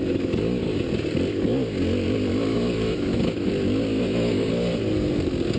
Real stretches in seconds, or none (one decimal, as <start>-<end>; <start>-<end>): 0.0-2.5; 3.5-3.9; 4.5-5.6